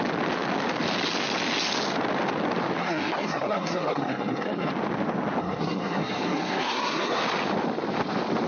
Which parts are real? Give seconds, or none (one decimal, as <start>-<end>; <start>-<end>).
0.0-2.8; 4.7-5.4; 7.2-8.5